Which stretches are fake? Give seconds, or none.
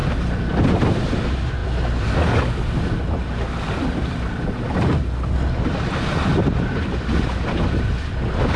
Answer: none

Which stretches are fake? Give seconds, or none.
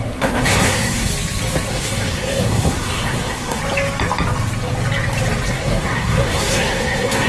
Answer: 0.0-1.1 (codec, SNAC); 1.7-3.6; 5.5-7.3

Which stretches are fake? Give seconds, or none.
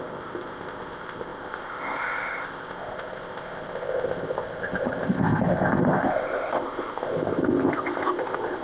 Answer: 0.0-8.6 (codec, ZipCodec)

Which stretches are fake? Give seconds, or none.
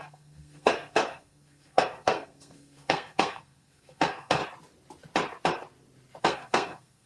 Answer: 0.0-4.4 (codec, SNAC); 6.2-7.1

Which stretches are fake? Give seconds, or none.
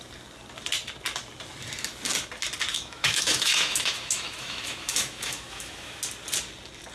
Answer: 2.7-6.0 (autoencoder, DAC-VAE)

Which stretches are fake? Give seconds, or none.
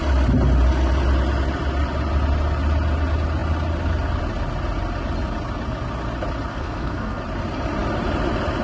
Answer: 6.5-7.2 (codec, SNAC)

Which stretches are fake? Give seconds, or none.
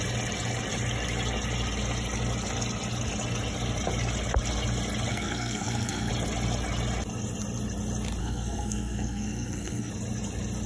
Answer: 5.1-6.1 (codec, SNAC); 8.2-9.9